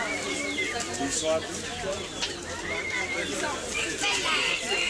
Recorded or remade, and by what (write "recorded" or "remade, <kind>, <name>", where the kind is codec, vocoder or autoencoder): recorded